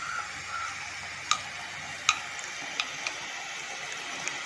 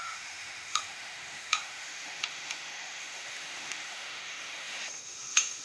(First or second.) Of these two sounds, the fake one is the second